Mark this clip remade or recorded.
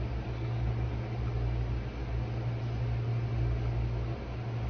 recorded